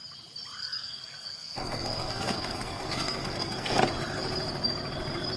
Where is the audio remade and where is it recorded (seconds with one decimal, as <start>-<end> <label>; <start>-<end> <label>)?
0.0-0.6 recorded; 0.6-3.8 remade; 3.8-5.4 recorded